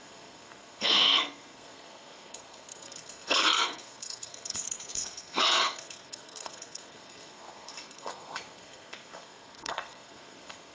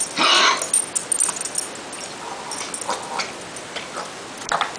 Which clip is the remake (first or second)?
first